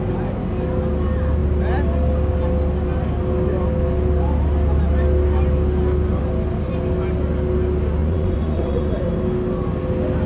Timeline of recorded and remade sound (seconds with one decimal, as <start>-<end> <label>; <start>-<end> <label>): 0.0-8.0 recorded; 8.0-9.0 remade; 9.0-10.3 recorded